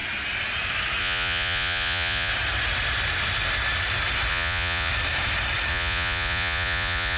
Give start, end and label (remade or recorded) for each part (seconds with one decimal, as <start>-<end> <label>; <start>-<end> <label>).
0.0-1.0 recorded; 1.0-2.3 remade; 2.3-4.3 recorded; 4.3-4.9 remade; 4.9-5.7 recorded; 5.7-7.2 remade